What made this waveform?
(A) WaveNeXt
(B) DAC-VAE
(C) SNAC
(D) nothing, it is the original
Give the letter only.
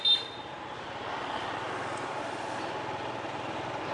D